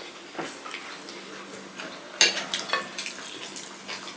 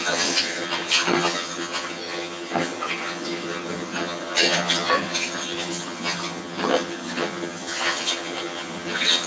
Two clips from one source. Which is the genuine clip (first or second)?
first